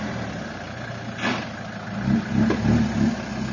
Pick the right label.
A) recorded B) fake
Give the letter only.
A